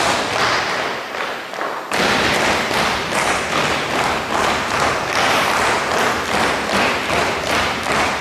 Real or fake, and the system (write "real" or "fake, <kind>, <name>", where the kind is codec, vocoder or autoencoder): real